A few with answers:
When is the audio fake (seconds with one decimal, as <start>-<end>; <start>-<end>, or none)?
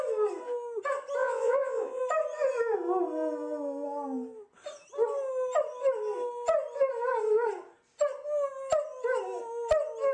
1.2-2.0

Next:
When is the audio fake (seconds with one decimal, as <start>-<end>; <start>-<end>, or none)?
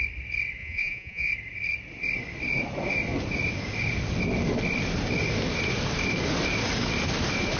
0.6-1.3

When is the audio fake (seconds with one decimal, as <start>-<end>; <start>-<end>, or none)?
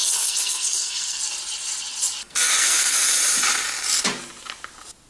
0.0-1.2; 2.2-3.1